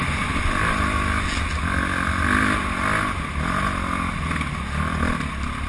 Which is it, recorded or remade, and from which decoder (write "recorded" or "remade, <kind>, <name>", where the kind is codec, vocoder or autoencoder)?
recorded